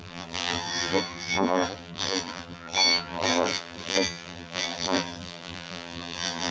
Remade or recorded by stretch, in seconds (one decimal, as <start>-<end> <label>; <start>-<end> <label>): 0.0-6.5 remade